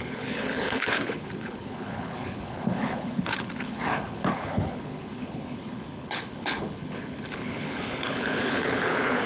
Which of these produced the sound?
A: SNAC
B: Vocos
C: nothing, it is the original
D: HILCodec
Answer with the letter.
D